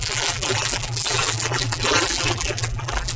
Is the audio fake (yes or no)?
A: yes